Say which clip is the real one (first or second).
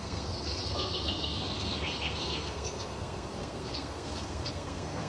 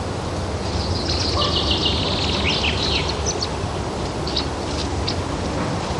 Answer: second